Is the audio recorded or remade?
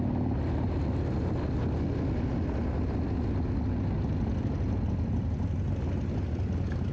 recorded